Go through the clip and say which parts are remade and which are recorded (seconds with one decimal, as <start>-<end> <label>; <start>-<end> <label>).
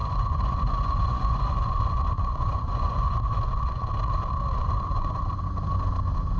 0.0-3.8 remade; 3.8-4.6 recorded; 4.6-5.2 remade; 5.2-6.4 recorded